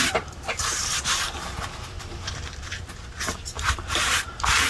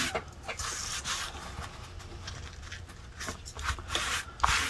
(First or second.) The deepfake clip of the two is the first